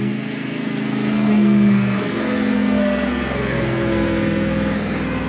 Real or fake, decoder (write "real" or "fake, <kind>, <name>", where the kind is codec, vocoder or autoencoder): fake, codec, SNAC